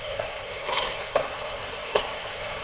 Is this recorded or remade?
remade